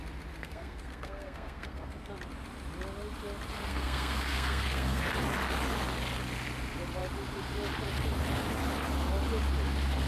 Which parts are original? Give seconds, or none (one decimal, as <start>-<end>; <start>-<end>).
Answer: 0.0-0.4; 2.1-3.7; 5.1-10.1